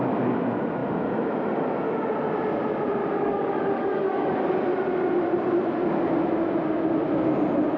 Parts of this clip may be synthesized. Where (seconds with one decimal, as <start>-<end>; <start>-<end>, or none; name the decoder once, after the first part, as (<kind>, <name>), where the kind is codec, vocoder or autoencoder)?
3.0-4.5 (codec, DAC)